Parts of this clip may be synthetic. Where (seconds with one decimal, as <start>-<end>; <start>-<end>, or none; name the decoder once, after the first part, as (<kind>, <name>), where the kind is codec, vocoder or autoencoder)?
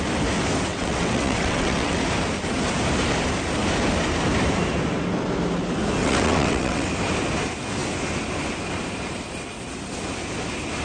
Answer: 0.7-2.0 (vocoder, WaveNeXt); 6.0-6.9